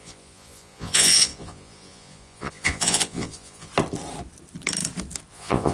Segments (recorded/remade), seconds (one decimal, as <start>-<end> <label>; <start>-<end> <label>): 0.0-3.7 remade; 3.7-5.3 recorded; 5.3-5.7 remade